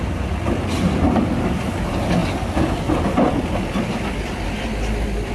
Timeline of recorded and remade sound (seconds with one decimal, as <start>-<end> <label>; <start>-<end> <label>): 0.0-5.3 recorded